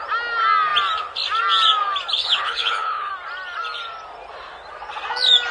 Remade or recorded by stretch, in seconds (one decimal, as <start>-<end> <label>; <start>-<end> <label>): 0.0-2.2 recorded; 2.2-3.1 remade; 3.1-5.5 recorded